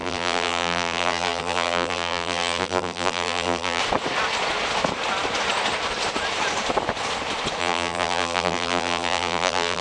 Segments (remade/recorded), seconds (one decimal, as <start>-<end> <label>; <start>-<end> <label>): 0.0-3.8 remade; 3.8-7.6 recorded; 7.6-9.8 remade